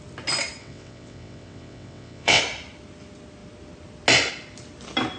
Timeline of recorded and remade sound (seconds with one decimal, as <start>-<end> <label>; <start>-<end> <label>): 0.0-0.6 recorded; 0.6-2.4 remade; 2.4-5.2 recorded